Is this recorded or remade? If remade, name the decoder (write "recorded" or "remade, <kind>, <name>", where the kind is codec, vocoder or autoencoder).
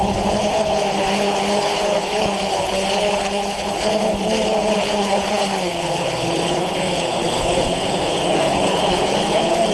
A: remade, codec, HILCodec